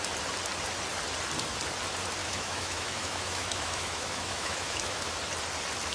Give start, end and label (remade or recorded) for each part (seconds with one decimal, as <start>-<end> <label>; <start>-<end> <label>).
0.0-2.2 recorded; 2.2-5.1 remade; 5.1-5.9 recorded